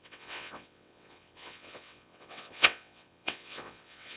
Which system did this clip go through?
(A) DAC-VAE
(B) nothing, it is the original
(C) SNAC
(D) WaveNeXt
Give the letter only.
D